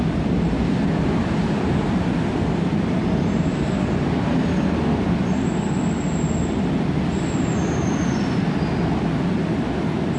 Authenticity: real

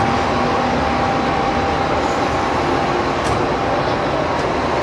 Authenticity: real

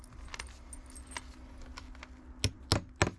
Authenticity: real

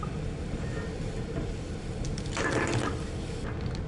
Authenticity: real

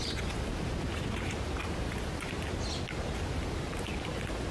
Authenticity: real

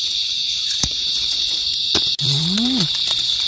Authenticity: fake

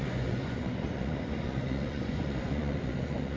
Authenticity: fake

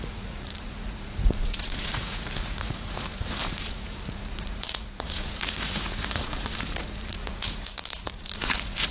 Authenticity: fake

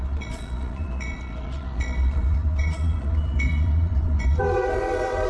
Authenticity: fake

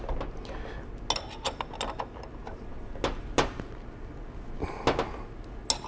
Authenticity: real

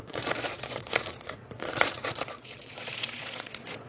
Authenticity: fake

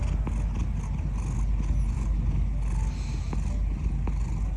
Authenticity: real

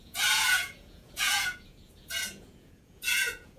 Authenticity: fake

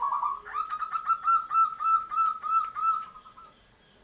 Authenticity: real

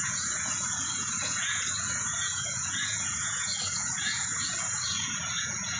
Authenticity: fake